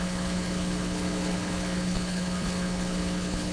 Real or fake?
fake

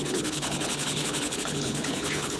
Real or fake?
fake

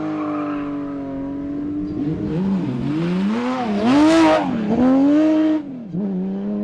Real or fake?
real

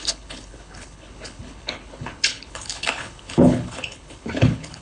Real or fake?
fake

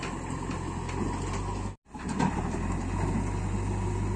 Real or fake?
real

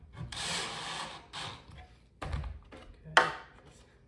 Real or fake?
real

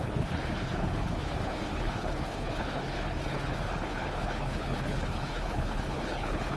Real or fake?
fake